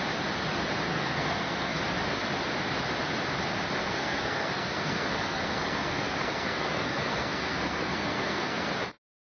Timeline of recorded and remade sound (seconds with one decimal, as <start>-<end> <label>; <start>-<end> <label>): 0.0-0.9 recorded; 0.9-1.8 remade; 1.8-3.8 recorded; 3.8-8.7 remade; 8.7-9.2 recorded